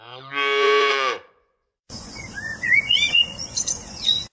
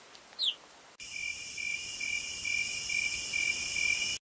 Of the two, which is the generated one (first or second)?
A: first